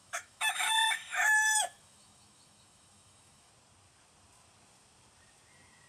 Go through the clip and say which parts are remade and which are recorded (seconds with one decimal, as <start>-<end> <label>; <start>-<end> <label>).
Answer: 0.0-3.5 remade; 3.5-5.9 recorded